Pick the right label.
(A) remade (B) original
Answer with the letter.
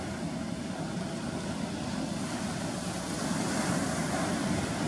B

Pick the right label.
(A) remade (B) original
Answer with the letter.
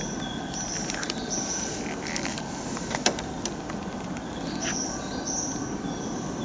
B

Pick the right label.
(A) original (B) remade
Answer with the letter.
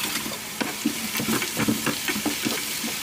B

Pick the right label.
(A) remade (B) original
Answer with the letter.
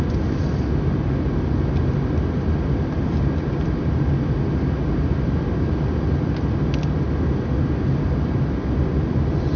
B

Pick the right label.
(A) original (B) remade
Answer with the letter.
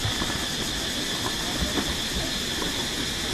A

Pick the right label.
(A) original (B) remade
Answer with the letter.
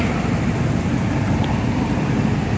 B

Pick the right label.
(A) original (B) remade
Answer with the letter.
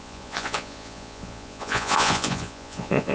B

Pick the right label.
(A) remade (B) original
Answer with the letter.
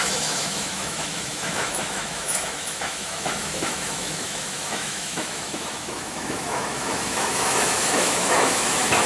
A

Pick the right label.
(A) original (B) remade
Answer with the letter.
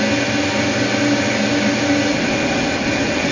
A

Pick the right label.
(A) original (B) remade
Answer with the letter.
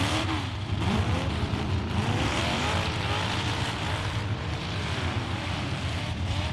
B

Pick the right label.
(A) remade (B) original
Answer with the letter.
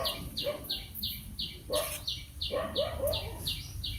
B